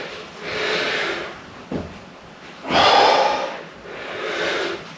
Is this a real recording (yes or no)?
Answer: yes